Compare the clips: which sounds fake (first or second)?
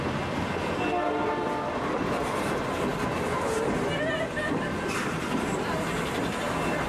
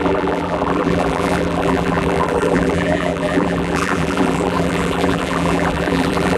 second